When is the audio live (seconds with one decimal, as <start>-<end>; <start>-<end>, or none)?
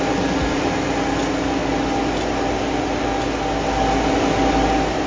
0.0-5.1